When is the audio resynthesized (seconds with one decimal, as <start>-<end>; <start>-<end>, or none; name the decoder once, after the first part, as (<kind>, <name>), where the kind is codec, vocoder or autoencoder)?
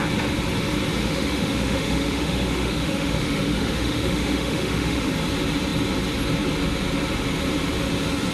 1.0-5.1 (autoencoder, DAC-VAE)